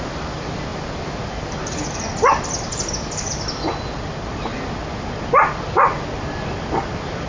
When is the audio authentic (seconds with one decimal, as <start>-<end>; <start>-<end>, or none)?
0.0-7.3